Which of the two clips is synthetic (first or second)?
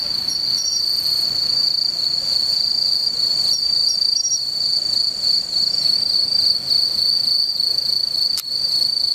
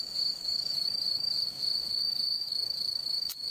second